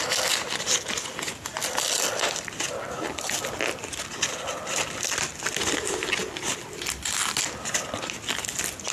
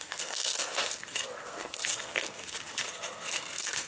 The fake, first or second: second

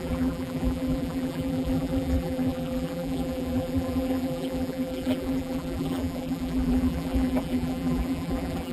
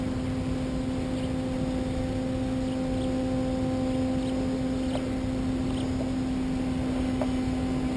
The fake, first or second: first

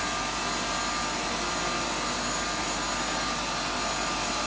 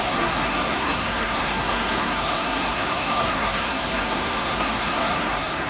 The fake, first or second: second